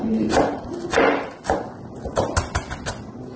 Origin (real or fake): real